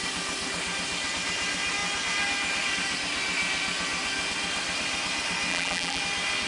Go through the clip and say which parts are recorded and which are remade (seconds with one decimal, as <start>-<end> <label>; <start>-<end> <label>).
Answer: 0.0-5.5 recorded; 5.5-6.0 remade; 6.0-6.5 recorded

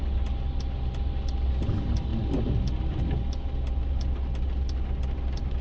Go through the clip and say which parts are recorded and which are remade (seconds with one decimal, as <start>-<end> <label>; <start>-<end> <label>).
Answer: 0.0-5.6 recorded

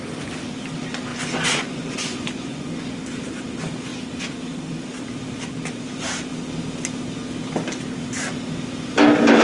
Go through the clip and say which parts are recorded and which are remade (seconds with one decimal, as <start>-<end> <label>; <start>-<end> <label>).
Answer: 0.0-1.1 recorded; 1.1-2.7 remade; 2.7-9.4 recorded

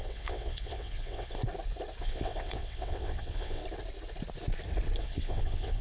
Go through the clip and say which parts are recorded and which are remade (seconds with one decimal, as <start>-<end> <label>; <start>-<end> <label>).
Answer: 0.0-1.4 remade; 1.4-2.0 recorded; 2.0-3.6 remade; 3.6-5.0 recorded; 5.0-5.8 remade

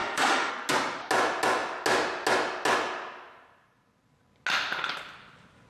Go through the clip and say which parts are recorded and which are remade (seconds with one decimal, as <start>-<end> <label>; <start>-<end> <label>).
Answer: 0.0-0.5 remade; 0.5-5.7 recorded

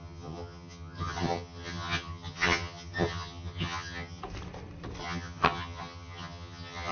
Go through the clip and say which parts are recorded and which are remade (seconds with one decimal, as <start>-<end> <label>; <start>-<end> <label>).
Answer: 0.0-4.2 remade; 4.2-5.0 recorded; 5.0-6.9 remade

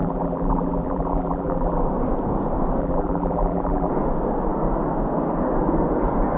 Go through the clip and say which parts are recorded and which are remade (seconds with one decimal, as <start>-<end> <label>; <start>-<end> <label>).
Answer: 0.0-1.8 remade; 1.8-2.8 recorded; 2.8-3.9 remade; 3.9-6.4 recorded